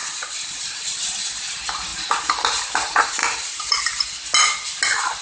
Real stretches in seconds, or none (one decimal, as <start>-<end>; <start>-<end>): 1.2-1.9; 2.7-3.2; 3.8-5.2